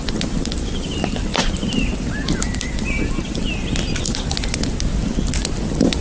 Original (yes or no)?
yes